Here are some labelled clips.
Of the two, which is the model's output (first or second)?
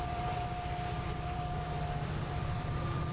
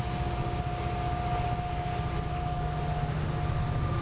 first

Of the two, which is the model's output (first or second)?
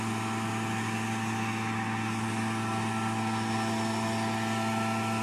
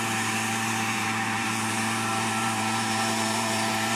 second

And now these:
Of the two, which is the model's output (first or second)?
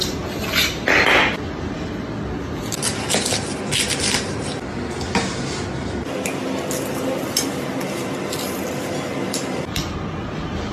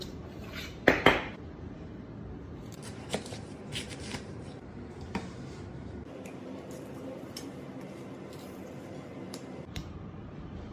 second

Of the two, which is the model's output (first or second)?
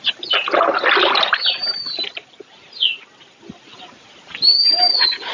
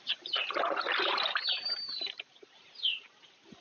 second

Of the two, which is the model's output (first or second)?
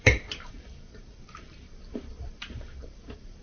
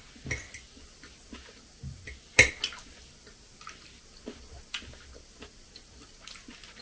first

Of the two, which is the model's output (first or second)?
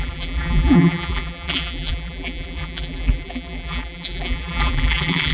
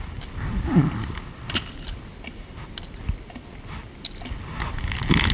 first